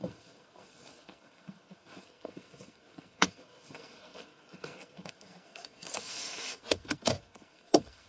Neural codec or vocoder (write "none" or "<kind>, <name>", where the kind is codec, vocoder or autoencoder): codec, SNAC